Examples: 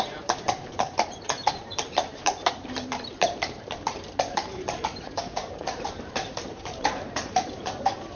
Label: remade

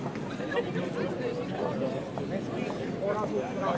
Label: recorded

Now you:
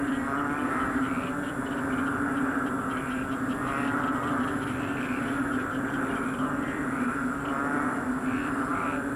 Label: remade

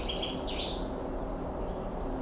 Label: recorded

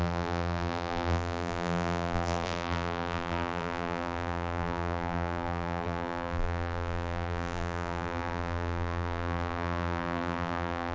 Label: remade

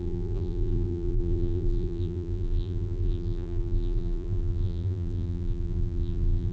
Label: remade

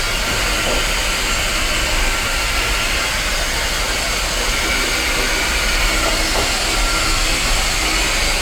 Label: recorded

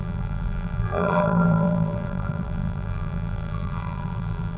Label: remade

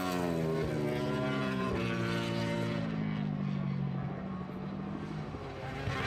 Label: recorded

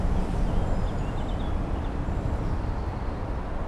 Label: recorded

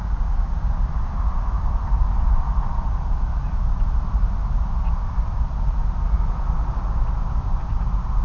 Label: recorded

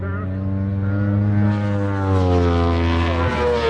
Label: recorded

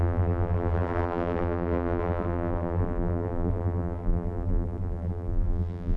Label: remade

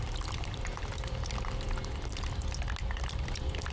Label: remade